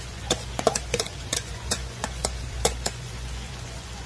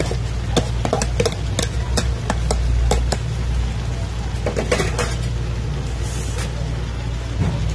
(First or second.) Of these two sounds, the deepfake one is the first